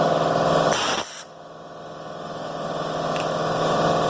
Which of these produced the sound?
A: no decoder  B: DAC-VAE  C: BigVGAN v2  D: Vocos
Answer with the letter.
A